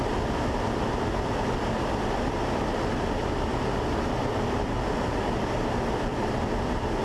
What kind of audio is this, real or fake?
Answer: real